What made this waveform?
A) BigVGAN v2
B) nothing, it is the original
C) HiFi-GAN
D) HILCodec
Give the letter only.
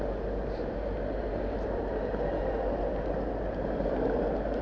B